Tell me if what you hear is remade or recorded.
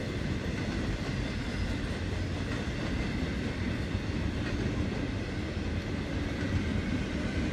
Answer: recorded